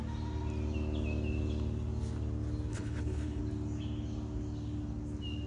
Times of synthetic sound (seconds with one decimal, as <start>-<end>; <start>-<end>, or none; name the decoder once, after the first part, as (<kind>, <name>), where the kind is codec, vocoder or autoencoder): 2.7-3.4 (codec, HILCodec)